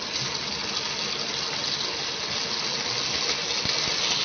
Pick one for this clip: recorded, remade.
recorded